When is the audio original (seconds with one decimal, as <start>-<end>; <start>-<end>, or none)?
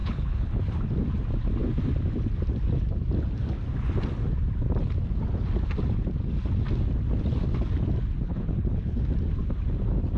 0.6-8.3; 9.1-10.2